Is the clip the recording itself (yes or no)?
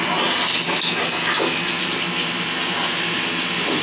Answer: yes